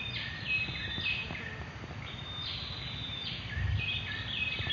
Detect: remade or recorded recorded